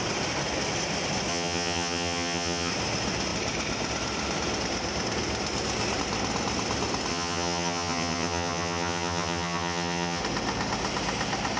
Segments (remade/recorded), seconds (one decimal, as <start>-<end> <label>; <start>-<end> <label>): 0.0-1.3 recorded; 1.3-2.7 remade; 2.7-7.1 recorded; 7.1-10.2 remade; 10.2-11.6 recorded